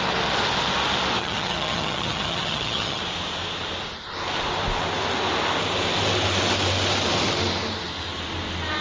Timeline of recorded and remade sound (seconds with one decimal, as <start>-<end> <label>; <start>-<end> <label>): 0.0-1.2 recorded; 1.2-3.0 remade; 3.0-8.8 recorded